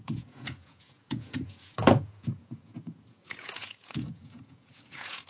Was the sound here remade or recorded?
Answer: remade